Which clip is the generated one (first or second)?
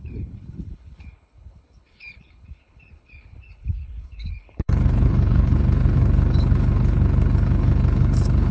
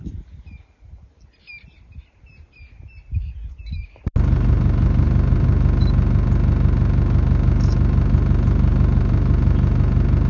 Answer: first